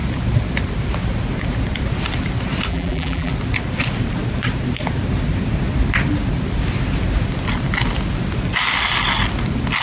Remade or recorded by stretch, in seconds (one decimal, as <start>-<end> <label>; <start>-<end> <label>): 0.0-2.7 recorded; 2.7-3.3 remade; 3.3-9.8 recorded